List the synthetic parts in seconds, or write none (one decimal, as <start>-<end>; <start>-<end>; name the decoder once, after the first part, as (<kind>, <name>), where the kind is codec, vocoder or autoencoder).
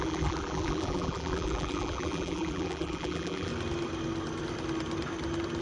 0.0-3.5 (vocoder, BigVGAN v2)